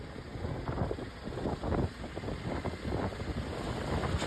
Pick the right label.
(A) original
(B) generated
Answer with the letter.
A